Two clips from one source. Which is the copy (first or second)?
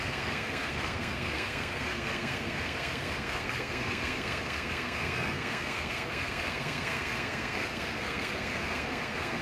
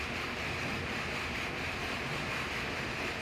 first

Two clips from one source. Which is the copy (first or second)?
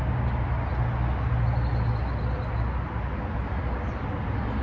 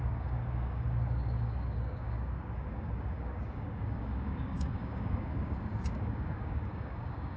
second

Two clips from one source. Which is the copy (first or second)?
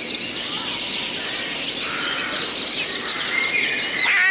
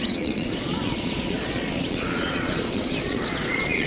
second